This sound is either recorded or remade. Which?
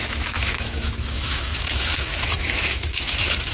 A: remade